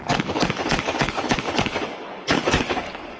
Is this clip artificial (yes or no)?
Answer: yes